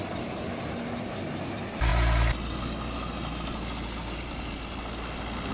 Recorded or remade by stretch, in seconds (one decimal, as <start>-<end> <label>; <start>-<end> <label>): 0.0-5.5 recorded